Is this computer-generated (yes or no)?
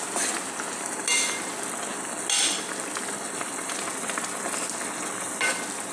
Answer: no